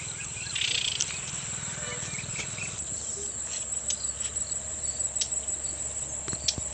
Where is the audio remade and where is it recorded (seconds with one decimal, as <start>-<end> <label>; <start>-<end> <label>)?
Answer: 0.0-6.7 recorded